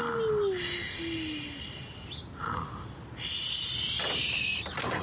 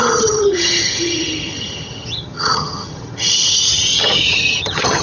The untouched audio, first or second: first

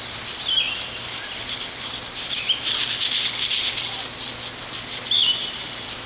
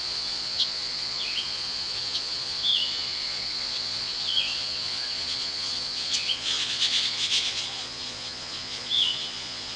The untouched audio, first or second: first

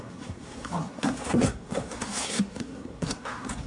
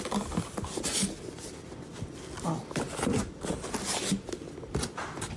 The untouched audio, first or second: second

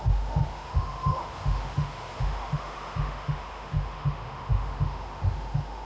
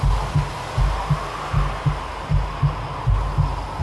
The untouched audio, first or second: second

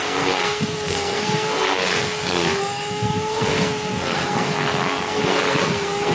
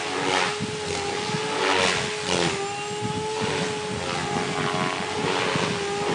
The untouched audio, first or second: second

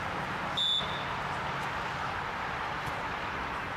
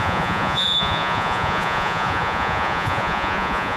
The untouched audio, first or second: first